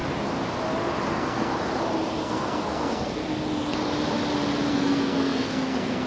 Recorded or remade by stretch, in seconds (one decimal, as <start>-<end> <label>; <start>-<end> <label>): 0.0-1.1 recorded; 1.1-1.5 remade; 1.5-2.2 recorded; 2.2-3.2 remade; 3.2-4.7 recorded; 4.7-6.1 remade